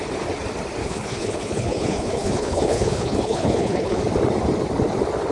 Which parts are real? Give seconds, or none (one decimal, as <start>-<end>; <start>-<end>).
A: 0.0-0.8; 4.0-5.3